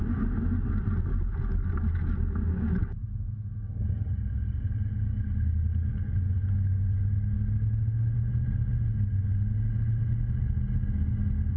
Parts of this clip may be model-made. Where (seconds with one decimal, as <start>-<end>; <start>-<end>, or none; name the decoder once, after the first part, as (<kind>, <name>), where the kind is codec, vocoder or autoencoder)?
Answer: none